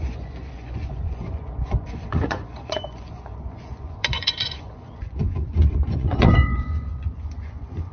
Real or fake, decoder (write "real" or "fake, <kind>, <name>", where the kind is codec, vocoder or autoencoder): fake, vocoder, Vocos